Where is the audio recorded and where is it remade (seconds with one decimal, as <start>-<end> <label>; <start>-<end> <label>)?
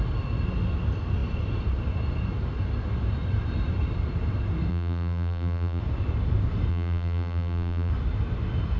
0.0-4.7 recorded; 4.7-5.8 remade; 5.8-6.7 recorded; 6.7-7.9 remade; 7.9-8.8 recorded